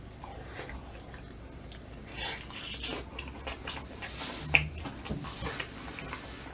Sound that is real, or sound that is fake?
real